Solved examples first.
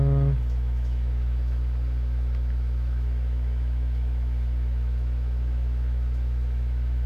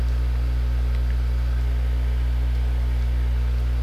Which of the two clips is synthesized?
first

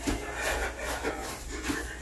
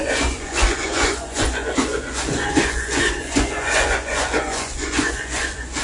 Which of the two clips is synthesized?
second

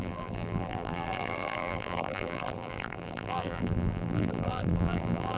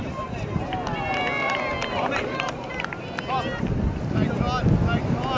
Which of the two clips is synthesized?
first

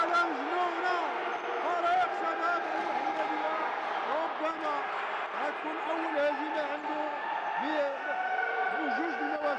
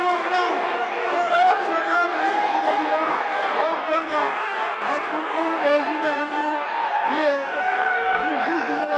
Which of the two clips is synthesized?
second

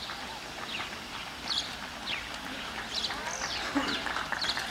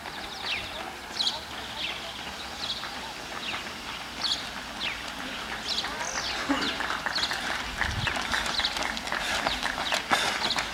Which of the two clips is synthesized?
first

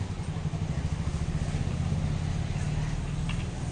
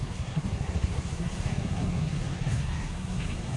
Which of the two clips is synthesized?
second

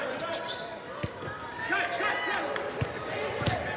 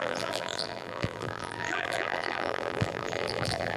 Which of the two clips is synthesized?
second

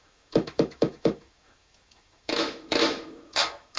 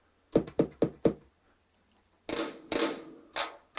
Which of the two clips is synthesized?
first